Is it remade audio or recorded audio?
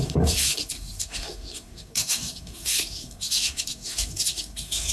remade